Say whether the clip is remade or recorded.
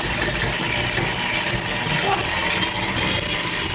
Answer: recorded